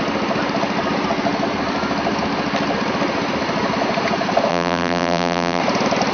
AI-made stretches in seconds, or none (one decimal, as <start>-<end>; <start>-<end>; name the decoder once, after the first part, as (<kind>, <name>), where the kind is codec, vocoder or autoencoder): 4.5-5.6 (vocoder, BigVGAN v2)